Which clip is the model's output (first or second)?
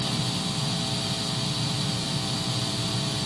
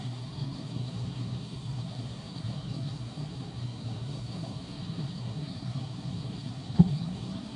second